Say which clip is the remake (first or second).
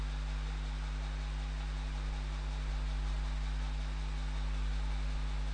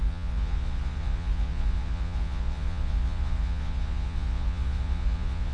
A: second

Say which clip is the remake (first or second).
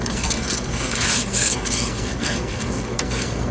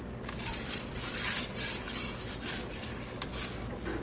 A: first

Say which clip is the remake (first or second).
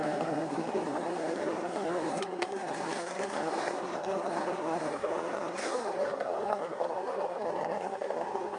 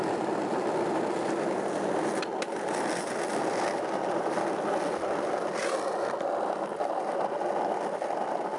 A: first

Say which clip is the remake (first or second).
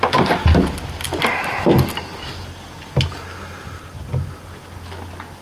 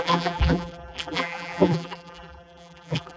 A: second